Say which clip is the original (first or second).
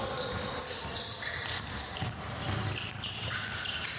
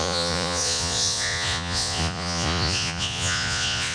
first